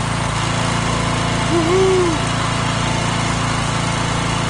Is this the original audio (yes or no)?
yes